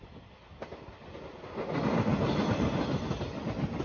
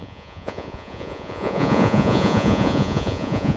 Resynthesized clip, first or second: second